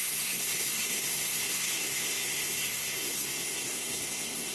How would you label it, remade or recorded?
remade